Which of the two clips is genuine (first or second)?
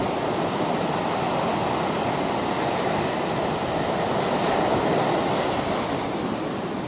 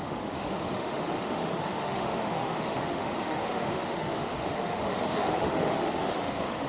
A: first